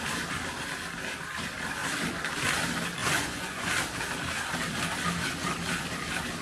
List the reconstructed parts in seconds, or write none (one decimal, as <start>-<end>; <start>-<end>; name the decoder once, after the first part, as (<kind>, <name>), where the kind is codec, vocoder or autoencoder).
3.0-3.7 (vocoder, Vocos)